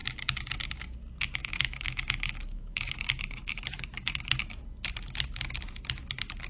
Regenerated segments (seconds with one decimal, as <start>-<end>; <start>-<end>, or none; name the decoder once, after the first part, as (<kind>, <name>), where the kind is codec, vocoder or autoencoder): 1.4-4.6 (autoencoder, DAC-VAE)